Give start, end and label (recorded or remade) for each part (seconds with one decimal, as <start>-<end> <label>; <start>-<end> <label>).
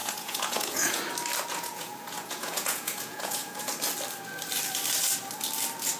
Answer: 0.0-1.0 remade; 1.0-1.5 recorded; 1.5-3.7 remade; 3.7-6.0 recorded